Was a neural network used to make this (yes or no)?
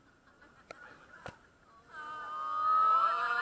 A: no